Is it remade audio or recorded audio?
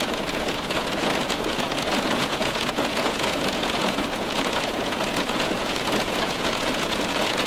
remade